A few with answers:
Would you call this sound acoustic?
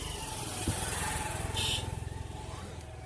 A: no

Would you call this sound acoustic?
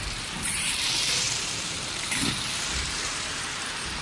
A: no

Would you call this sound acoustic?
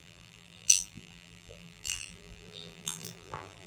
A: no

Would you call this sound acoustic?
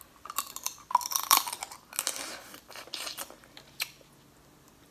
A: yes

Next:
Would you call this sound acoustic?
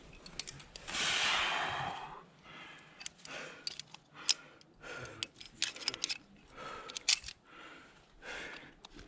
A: yes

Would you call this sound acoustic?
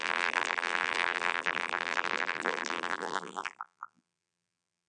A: no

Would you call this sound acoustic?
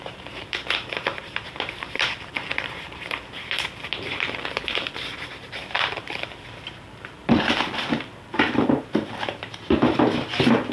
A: no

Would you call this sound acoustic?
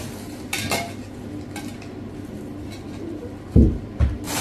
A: yes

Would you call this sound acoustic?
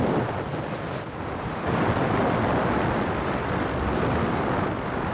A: no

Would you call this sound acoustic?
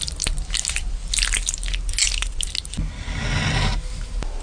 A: yes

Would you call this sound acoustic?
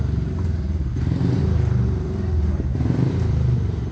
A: no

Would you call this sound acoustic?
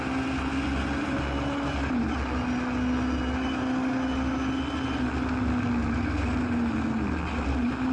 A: yes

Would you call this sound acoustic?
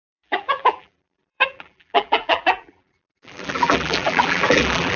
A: no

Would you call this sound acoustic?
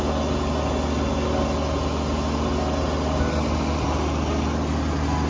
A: yes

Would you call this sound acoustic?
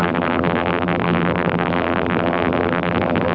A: no